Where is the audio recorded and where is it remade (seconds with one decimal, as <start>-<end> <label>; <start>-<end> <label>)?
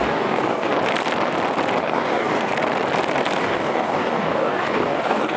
0.0-0.7 remade; 0.7-1.8 recorded; 1.8-2.5 remade; 2.5-3.4 recorded; 3.4-5.4 remade